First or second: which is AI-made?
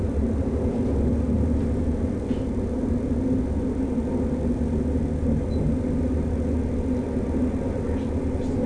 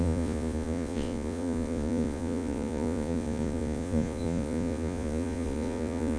second